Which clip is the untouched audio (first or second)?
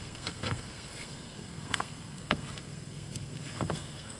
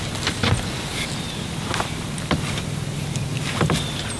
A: second